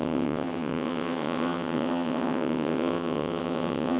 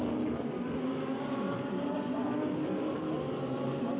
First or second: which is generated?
first